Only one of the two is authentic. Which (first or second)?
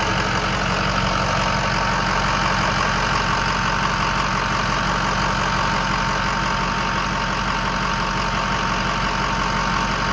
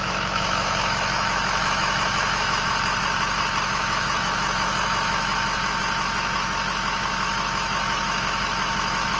first